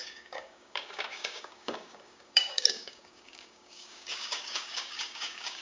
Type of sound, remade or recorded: remade